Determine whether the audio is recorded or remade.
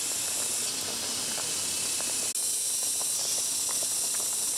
recorded